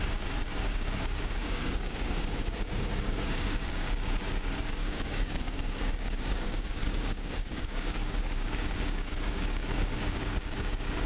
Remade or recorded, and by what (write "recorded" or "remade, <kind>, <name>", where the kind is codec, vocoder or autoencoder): remade, codec, DAC